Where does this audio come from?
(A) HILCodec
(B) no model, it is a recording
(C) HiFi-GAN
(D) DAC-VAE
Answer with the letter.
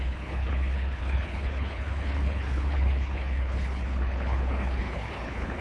A